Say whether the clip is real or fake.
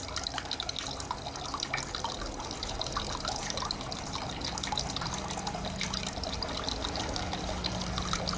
real